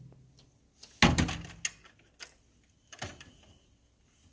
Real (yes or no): yes